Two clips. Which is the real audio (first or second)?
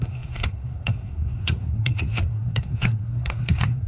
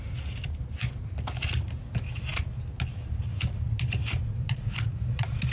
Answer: second